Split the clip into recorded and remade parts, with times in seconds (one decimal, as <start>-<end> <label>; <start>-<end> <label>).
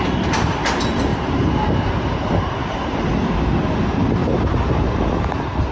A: 0.0-1.1 recorded; 1.1-1.6 remade; 1.6-2.6 recorded; 2.6-3.4 remade; 3.4-4.2 recorded; 4.2-4.9 remade; 4.9-5.7 recorded